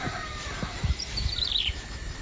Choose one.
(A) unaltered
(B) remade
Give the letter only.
B